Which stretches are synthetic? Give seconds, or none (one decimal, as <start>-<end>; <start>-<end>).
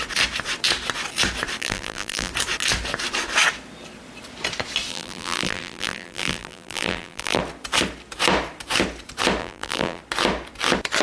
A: 1.6-2.3; 4.9-7.4; 9.4-10.0